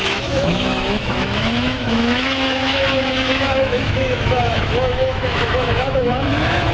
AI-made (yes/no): yes